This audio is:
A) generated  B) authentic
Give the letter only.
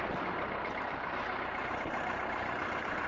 B